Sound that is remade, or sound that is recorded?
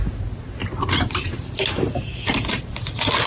remade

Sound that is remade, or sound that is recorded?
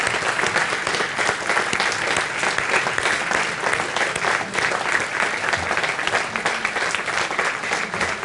recorded